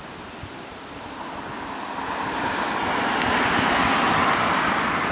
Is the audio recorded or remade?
recorded